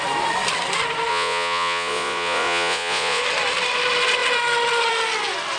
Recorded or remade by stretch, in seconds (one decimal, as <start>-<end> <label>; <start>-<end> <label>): 0.0-1.1 recorded; 1.1-3.2 remade; 3.2-5.6 recorded